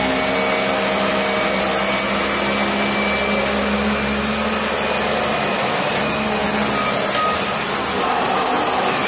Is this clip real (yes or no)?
yes